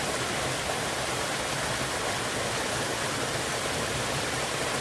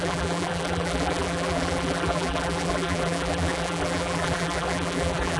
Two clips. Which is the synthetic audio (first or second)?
second